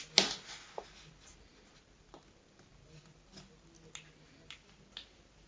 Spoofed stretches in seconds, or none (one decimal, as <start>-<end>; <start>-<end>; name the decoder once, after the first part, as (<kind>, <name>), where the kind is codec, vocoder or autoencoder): none